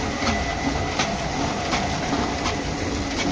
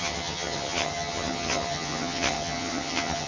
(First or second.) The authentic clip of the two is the first